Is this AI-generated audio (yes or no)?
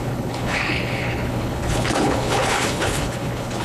yes